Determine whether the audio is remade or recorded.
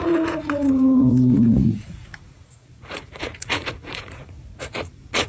remade